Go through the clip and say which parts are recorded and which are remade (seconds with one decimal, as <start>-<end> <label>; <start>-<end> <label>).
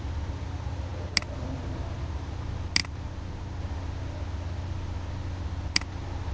0.0-6.3 recorded